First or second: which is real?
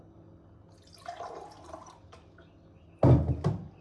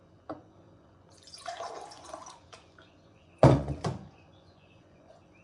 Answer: first